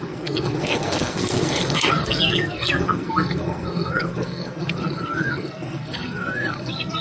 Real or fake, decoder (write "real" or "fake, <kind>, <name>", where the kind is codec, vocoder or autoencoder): fake, codec, SNAC